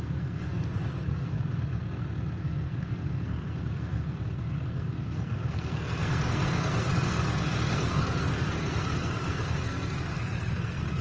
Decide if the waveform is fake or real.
fake